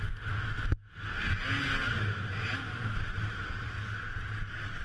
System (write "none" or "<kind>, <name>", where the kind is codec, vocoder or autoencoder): none